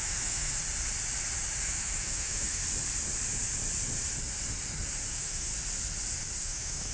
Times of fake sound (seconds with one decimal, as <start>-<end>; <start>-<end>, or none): 0.0-0.6; 1.6-2.6; 5.1-5.5; 6.4-6.9